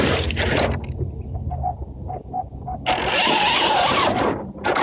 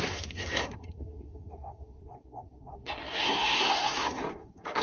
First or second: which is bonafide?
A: first